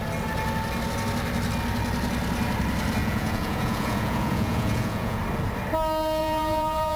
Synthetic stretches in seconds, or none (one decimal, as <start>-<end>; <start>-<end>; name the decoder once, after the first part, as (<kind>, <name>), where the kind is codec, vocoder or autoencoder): 3.0-5.2 (vocoder, Vocos); 6.2-7.0